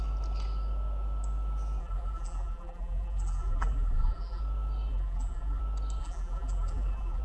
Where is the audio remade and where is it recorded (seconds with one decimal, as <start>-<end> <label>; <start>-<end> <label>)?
0.0-1.8 recorded; 1.8-4.4 remade; 4.4-4.9 recorded; 4.9-5.6 remade; 5.6-6.0 recorded; 6.0-7.2 remade